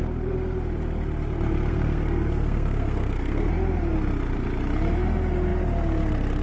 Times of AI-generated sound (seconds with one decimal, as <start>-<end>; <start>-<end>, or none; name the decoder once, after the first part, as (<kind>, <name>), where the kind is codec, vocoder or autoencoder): 1.7-3.5 (codec, SNAC)